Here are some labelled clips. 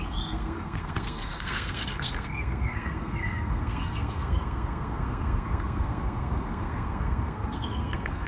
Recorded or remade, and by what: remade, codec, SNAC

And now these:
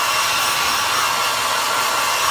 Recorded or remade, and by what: recorded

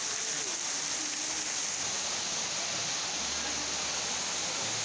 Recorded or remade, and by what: recorded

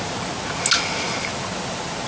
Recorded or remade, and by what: recorded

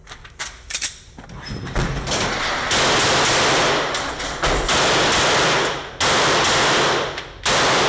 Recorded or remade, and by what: recorded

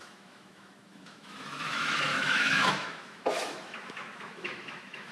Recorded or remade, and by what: remade, autoencoder, DAC-VAE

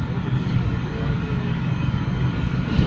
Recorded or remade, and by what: remade, codec, DAC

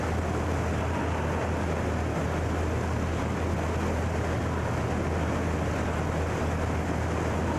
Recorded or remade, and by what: recorded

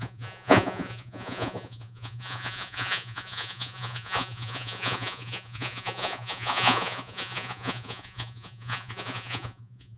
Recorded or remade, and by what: remade, vocoder, Vocos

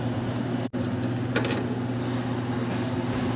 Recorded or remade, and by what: recorded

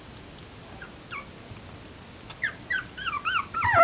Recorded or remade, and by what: recorded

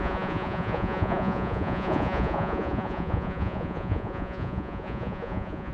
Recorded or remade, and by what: remade, vocoder, Vocos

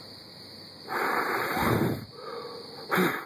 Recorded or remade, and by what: recorded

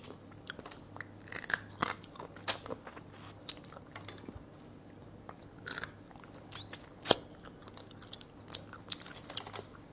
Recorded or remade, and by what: recorded